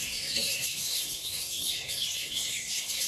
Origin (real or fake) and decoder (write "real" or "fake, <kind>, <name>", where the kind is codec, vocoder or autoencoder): fake, codec, SNAC